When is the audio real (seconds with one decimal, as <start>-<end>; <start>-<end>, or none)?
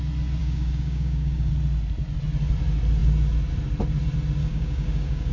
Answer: 0.0-0.4; 1.5-4.4